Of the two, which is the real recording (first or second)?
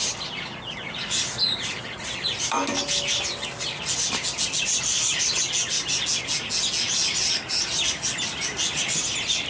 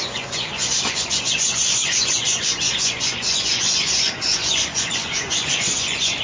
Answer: first